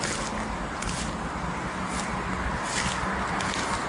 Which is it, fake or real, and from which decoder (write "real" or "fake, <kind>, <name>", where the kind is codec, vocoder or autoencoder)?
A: real